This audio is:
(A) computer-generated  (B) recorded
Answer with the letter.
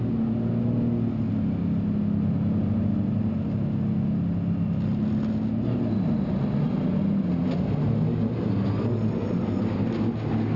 B